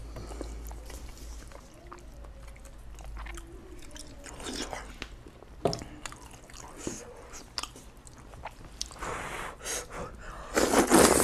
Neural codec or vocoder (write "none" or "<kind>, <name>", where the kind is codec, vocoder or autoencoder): none